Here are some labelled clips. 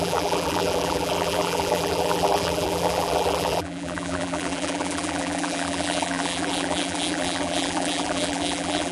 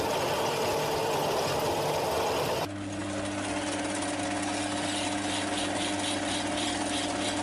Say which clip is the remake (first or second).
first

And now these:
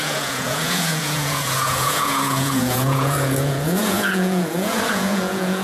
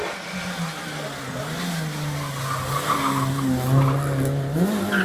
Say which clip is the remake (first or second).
first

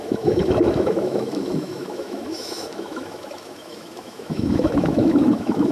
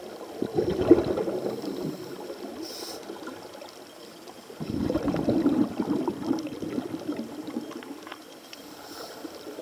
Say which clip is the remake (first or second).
first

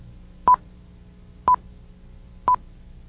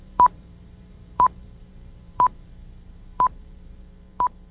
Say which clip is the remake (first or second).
second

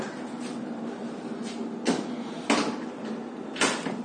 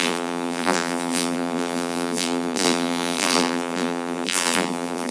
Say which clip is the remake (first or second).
second